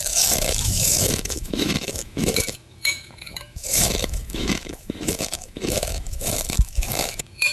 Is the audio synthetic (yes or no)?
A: yes